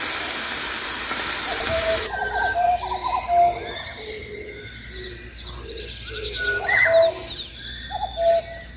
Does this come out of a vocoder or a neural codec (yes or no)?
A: no